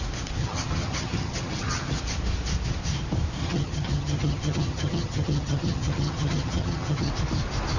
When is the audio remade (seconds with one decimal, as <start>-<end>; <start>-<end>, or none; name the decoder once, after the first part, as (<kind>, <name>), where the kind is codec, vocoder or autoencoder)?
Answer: 0.4-2.0 (vocoder, HiFi-GAN); 3.4-7.1